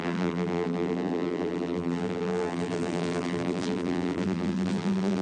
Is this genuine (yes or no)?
no